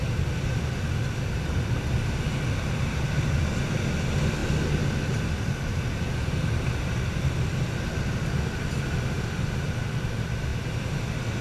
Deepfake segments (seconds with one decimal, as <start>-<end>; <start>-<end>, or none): none